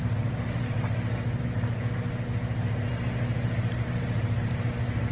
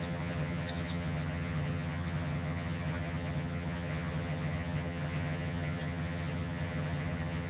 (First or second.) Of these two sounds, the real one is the first